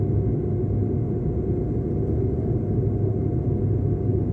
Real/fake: real